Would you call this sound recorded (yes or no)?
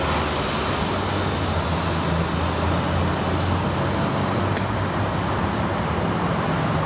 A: yes